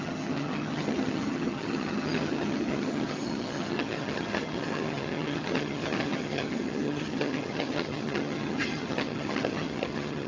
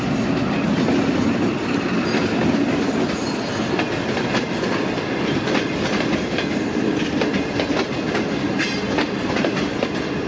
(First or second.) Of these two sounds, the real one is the second